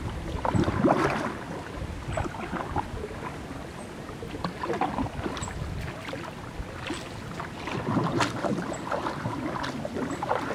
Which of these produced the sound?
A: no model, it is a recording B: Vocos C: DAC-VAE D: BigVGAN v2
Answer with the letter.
A